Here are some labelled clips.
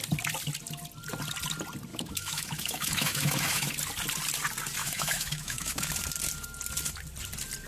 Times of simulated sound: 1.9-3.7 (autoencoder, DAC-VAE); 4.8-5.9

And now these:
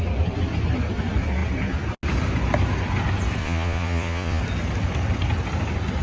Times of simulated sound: 3.4-4.4 (vocoder, Vocos)

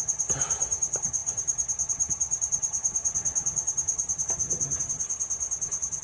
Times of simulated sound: 0.0-6.0 (vocoder, HiFi-GAN)

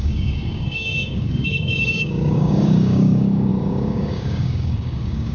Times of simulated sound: 0.0-5.3 (codec, DAC)

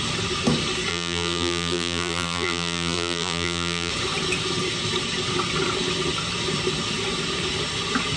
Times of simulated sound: 0.9-3.9 (vocoder, BigVGAN v2)